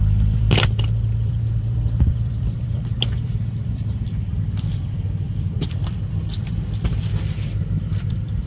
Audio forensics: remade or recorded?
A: remade